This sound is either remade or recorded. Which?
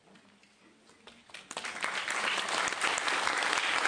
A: recorded